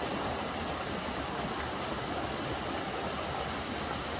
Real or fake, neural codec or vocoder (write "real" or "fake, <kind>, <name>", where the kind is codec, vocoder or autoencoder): real